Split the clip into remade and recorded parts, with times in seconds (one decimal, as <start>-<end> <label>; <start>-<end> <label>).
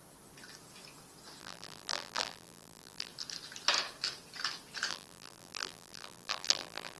0.0-1.4 recorded; 1.4-3.1 remade; 3.1-4.9 recorded; 4.9-7.0 remade